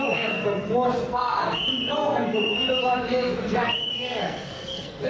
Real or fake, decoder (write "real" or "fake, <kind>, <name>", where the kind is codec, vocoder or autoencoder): fake, codec, SNAC